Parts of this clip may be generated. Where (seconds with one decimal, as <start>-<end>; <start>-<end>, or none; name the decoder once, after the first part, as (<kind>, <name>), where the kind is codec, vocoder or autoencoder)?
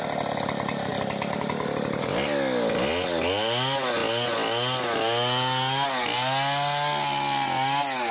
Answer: none